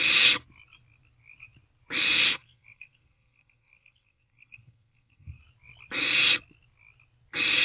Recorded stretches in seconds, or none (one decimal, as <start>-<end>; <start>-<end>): 0.0-2.3; 5.4-7.6